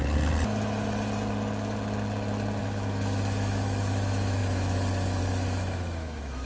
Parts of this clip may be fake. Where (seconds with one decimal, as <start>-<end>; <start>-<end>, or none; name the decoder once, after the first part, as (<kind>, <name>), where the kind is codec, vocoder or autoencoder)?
2.6-6.5 (autoencoder, DAC-VAE)